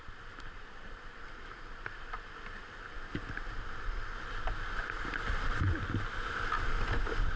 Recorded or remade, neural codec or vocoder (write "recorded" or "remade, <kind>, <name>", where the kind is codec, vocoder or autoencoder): recorded